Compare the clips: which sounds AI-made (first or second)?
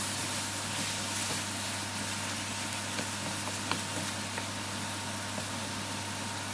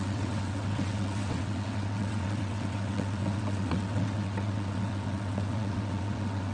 second